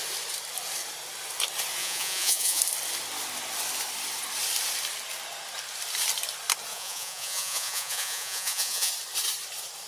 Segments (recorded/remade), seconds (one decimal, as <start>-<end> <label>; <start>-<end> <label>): 0.0-1.8 recorded; 1.8-2.6 remade; 2.6-6.7 recorded; 6.7-8.9 remade; 8.9-9.9 recorded